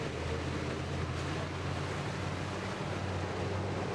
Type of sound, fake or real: real